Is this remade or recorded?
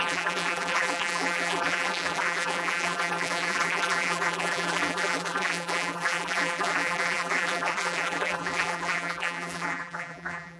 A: remade